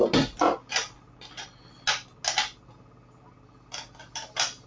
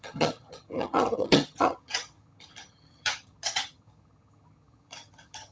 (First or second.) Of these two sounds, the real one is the first